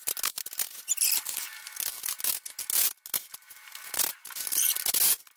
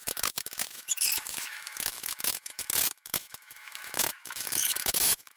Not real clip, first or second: second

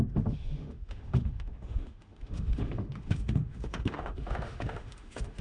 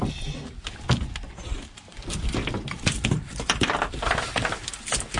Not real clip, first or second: first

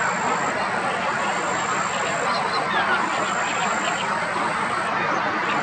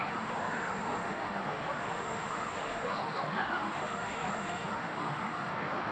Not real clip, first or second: second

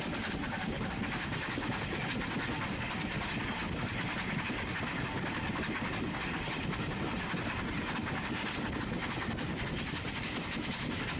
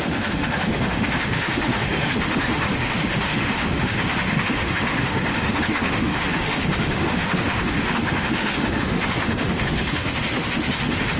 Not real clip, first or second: second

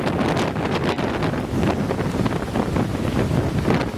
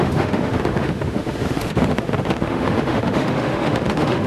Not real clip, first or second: second